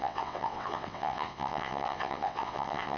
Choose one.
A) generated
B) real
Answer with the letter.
A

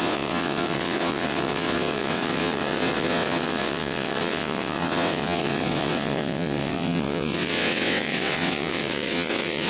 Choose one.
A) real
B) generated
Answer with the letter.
B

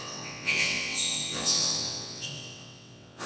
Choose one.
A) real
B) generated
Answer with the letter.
B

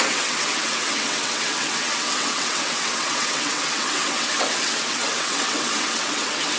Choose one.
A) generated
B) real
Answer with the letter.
A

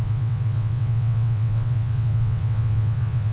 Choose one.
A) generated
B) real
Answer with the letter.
A